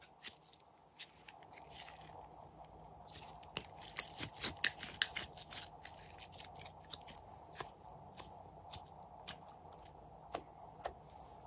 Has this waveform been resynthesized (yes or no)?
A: no